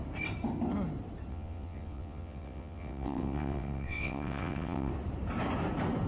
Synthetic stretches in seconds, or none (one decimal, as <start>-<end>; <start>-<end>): 1.3-4.9

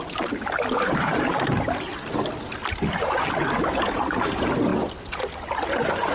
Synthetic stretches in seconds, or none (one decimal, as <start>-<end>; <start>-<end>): none

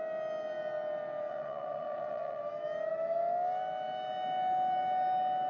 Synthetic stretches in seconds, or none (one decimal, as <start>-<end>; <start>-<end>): 1.3-2.4